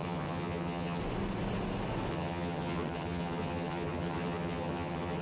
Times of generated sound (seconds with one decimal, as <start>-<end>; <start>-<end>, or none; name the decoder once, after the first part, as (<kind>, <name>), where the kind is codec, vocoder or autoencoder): 0.0-1.0 (vocoder, HiFi-GAN); 2.1-5.2